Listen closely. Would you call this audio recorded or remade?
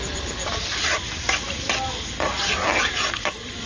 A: remade